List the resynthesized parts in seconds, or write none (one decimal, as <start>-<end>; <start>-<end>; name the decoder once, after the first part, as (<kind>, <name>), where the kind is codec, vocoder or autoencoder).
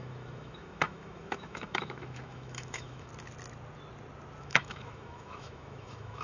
0.0-3.1 (autoencoder, DAC-VAE); 4.4-6.2